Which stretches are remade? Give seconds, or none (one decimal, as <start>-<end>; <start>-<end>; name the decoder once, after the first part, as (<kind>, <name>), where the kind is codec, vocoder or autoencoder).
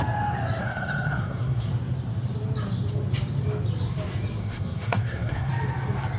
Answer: 0.6-1.7 (codec, SNAC); 4.4-5.5